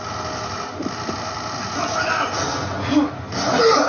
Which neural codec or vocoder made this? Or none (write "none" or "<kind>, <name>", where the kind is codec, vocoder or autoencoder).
none